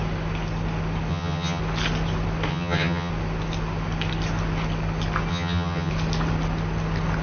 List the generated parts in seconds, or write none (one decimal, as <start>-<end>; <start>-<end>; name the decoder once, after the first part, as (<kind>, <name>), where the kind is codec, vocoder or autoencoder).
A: 1.1-1.6 (vocoder, HiFi-GAN); 2.5-3.1; 5.3-5.9